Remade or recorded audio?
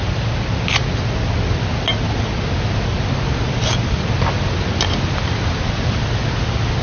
recorded